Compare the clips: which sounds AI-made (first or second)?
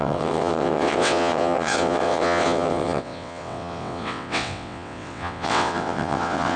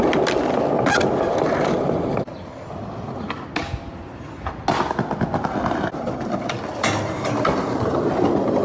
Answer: first